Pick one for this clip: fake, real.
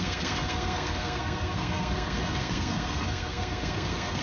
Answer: fake